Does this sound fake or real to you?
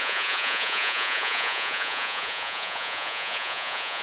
fake